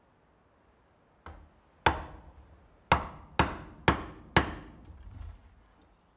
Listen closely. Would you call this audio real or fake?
real